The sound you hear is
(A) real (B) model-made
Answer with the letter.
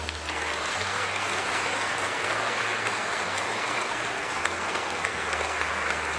B